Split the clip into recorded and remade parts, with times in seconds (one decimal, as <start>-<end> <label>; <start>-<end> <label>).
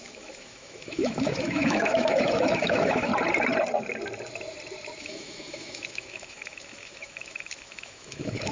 0.0-3.1 remade; 3.1-5.0 recorded; 5.0-8.5 remade